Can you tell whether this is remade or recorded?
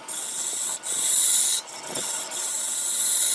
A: recorded